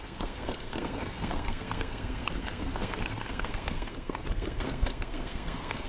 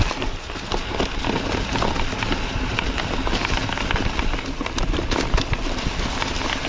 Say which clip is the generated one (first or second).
first